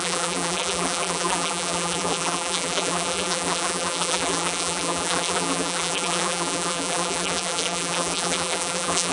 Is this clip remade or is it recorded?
remade